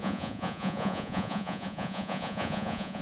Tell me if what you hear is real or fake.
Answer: fake